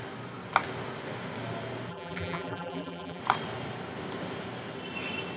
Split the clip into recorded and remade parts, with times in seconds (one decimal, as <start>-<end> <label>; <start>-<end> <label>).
0.0-1.9 recorded; 1.9-3.2 remade; 3.2-5.4 recorded